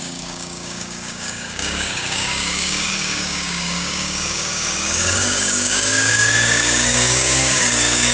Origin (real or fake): fake